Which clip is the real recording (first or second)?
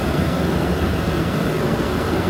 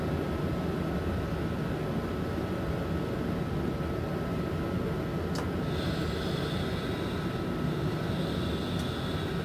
second